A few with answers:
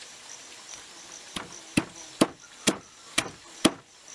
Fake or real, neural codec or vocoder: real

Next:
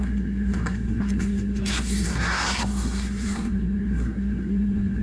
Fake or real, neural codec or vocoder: fake, codec, SNAC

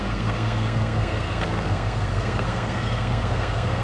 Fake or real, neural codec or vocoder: fake, codec, SNAC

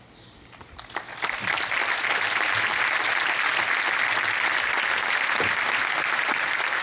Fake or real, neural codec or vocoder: real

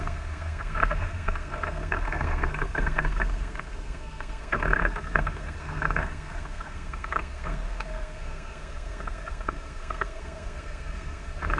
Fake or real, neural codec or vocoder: fake, codec, SNAC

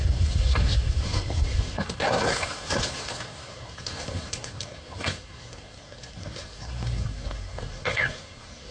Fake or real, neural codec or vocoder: fake, codec, SNAC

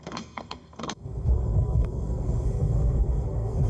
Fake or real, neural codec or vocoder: fake, codec, SNAC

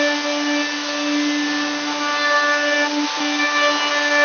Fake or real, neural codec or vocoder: real